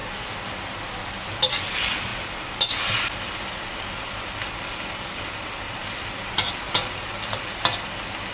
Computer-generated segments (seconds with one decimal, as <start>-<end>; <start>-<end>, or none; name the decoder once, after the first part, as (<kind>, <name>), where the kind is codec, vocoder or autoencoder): 0.0-1.4 (vocoder, BigVGAN v2); 5.8-7.5

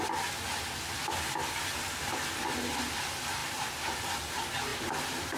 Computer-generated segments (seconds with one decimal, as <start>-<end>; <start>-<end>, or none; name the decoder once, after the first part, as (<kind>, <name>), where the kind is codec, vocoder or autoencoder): 4.7-5.4 (vocoder, BigVGAN v2)